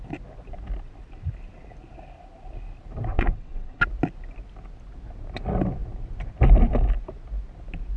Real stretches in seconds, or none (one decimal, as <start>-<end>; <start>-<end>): 0.0-3.1; 3.8-8.0